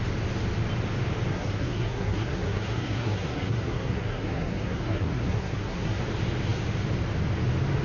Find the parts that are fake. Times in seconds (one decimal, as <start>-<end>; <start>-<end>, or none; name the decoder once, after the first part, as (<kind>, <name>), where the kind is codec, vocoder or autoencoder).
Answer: 1.3-6.0 (codec, SNAC)